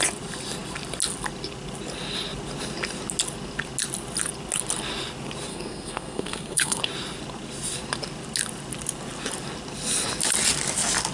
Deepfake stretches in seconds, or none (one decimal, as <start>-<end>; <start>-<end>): 5.5-6.8